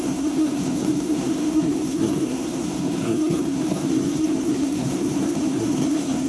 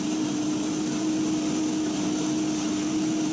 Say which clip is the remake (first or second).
first